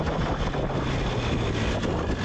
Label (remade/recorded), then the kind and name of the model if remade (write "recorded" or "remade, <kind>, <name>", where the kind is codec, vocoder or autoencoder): recorded